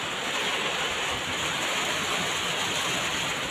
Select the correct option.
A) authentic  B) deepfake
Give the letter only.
A